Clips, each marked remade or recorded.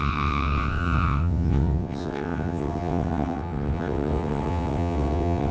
remade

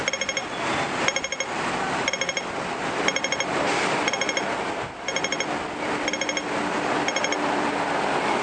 recorded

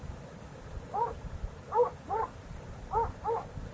recorded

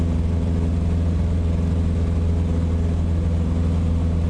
recorded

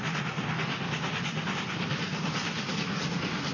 recorded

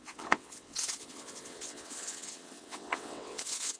remade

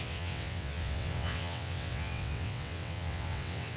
remade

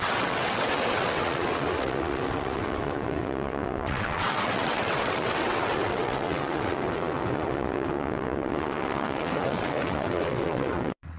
remade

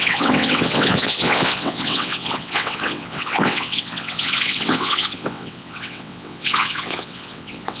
remade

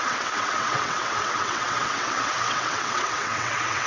remade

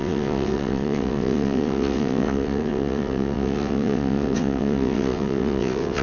remade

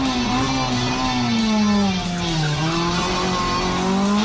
recorded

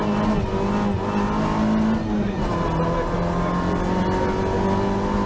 recorded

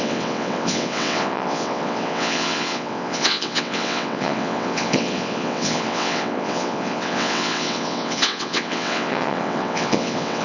remade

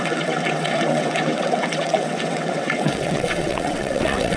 remade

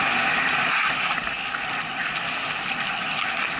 recorded